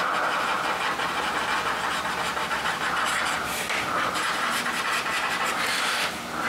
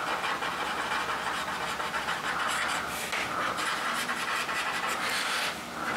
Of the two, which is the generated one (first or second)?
first